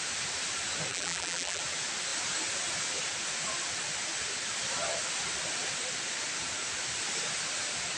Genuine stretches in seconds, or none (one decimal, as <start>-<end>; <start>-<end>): 0.0-0.9; 1.6-8.0